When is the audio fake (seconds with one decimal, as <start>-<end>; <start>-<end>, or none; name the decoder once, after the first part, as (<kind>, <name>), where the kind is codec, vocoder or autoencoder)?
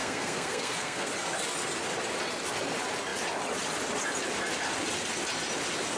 0.0-1.1 (codec, SNAC)